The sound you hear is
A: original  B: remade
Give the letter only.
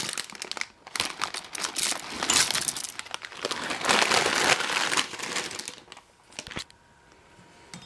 A